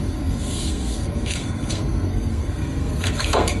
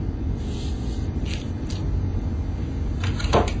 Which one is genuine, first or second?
second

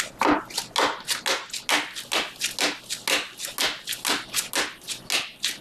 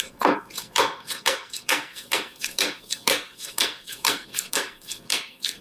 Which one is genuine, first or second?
first